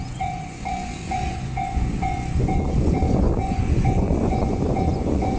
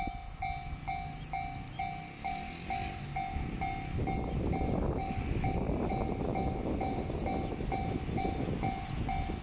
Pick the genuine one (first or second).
second